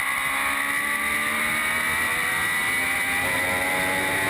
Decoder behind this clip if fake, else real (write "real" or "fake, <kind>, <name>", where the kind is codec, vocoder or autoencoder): real